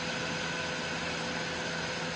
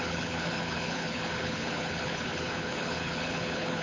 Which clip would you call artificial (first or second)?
second